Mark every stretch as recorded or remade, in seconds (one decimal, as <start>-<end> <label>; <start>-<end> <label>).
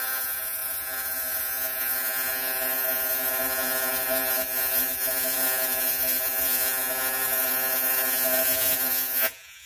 0.0-9.7 remade